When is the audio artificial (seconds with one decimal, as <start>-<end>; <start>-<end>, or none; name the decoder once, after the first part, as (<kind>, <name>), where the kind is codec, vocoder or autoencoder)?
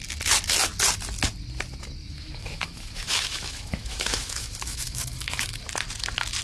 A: 2.0-5.6 (autoencoder, DAC-VAE)